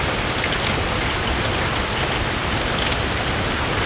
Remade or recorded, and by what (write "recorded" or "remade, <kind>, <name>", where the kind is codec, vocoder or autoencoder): recorded